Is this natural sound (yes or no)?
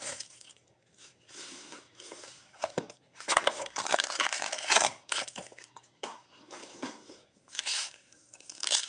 no